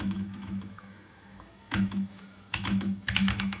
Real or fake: fake